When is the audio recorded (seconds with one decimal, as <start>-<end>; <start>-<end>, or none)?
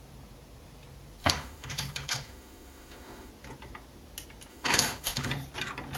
0.0-1.2; 3.3-4.5; 5.3-6.0